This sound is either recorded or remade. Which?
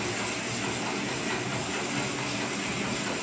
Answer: recorded